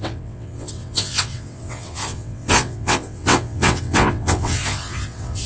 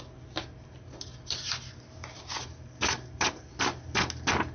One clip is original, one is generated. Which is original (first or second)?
second